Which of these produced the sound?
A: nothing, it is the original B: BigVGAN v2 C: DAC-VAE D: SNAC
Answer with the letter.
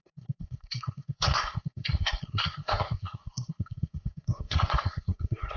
D